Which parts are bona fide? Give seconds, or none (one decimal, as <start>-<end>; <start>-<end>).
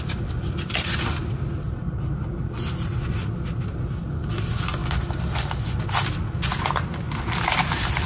0.0-8.1